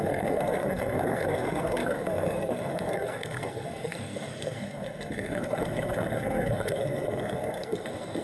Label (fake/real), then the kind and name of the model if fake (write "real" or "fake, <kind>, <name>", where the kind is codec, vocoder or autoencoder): fake, codec, SNAC